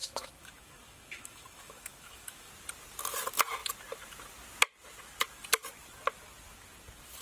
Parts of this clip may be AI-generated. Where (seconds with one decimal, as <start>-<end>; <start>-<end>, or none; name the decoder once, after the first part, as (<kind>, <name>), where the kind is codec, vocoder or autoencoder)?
0.0-2.5 (autoencoder, DAC-VAE)